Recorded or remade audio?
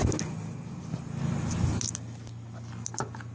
recorded